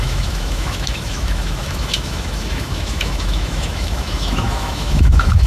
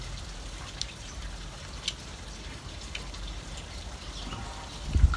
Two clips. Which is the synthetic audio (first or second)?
first